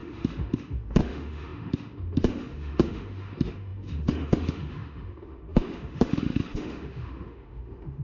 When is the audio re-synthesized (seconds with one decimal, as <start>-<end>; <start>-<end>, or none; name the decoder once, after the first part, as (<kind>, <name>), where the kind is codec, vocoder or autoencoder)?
0.0-8.0 (autoencoder, DAC-VAE)